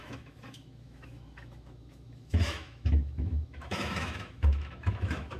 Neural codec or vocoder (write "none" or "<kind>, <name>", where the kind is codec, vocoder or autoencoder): autoencoder, DAC-VAE